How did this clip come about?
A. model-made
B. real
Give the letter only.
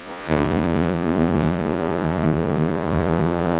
A